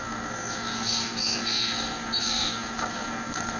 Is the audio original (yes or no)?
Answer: no